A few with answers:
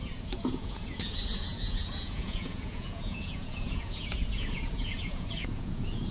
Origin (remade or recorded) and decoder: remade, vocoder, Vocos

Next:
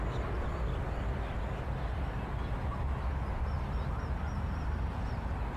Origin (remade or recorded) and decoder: recorded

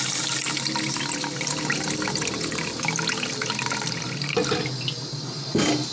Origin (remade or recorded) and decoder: recorded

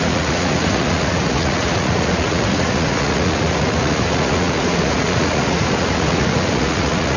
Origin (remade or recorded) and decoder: remade, vocoder, Vocos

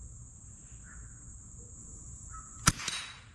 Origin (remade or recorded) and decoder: remade, vocoder, Vocos